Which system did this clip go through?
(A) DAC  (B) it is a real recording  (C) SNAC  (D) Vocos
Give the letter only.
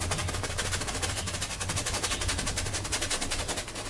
B